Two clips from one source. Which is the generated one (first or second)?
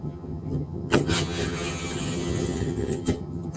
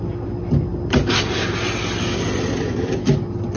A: first